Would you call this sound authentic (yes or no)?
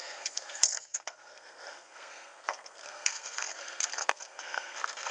no